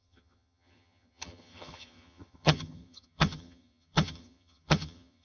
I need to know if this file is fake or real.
fake